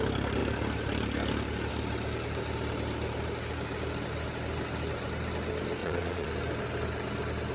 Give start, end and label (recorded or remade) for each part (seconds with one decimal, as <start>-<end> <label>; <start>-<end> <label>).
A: 0.0-5.8 recorded; 5.8-6.3 remade; 6.3-7.5 recorded